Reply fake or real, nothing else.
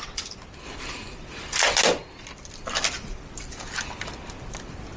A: real